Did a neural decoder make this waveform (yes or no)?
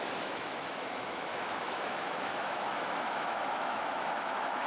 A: yes